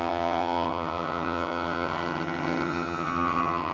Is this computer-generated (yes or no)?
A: yes